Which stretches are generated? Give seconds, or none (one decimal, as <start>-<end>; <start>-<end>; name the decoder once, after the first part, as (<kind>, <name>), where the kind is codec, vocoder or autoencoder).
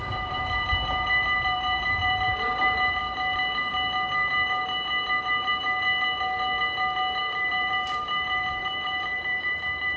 0.0-3.0 (vocoder, BigVGAN v2); 7.2-10.0